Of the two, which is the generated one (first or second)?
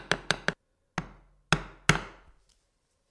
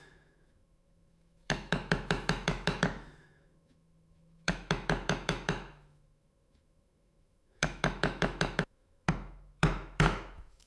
second